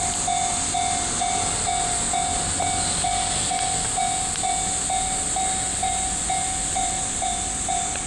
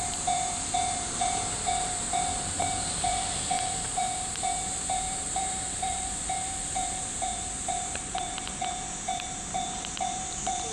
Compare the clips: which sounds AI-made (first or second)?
second